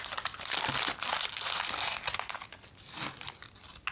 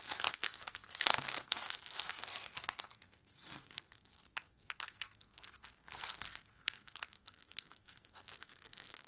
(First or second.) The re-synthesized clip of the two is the second